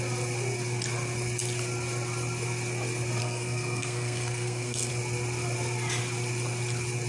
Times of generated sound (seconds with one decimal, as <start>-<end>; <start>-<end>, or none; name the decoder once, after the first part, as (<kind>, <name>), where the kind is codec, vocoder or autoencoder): 3.2-4.9 (codec, SNAC)